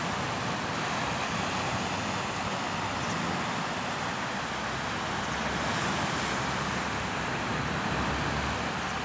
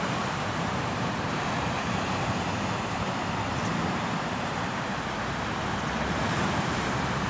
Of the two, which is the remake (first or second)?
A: second